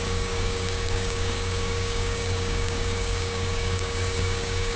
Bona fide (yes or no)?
no